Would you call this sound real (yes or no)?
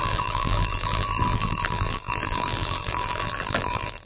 no